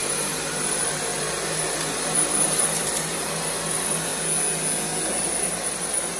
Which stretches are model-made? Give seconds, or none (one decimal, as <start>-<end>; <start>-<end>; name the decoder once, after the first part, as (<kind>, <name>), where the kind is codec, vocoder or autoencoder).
0.0-4.1 (vocoder, BigVGAN v2); 5.2-6.2